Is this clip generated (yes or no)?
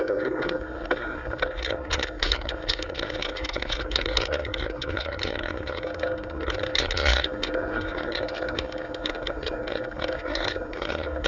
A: yes